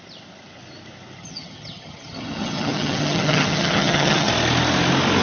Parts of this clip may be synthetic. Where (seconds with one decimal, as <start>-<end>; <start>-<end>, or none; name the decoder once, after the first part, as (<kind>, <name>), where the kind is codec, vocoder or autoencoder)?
1.2-4.3 (vocoder, HiFi-GAN)